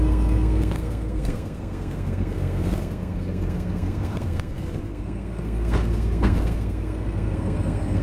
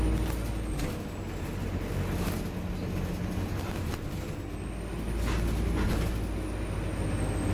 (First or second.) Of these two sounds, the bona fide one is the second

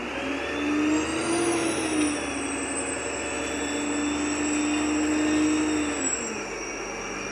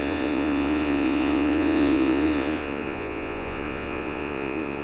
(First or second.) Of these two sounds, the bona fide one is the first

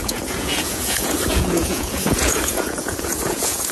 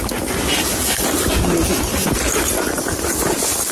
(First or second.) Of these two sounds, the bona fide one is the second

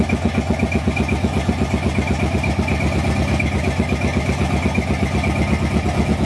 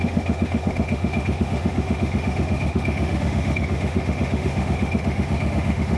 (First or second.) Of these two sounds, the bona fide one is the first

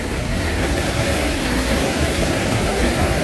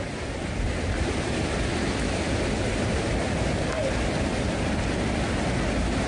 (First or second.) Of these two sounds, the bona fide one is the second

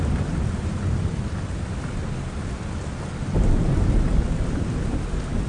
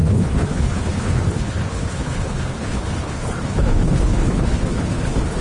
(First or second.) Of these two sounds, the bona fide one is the first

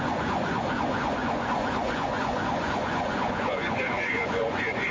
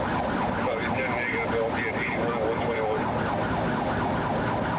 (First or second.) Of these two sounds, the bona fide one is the second